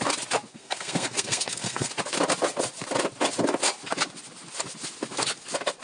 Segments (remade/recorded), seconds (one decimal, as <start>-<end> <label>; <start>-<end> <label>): 0.0-0.5 recorded; 0.5-1.9 remade; 1.9-5.8 recorded